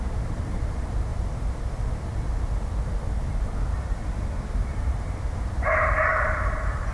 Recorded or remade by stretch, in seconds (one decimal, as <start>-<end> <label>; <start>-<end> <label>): 0.0-1.1 remade; 1.1-4.5 recorded; 4.5-6.9 remade